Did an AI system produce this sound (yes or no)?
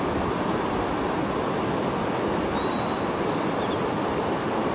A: no